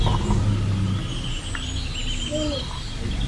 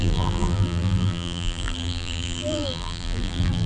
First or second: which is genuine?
first